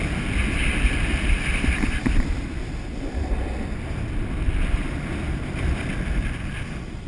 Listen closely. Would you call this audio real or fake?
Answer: real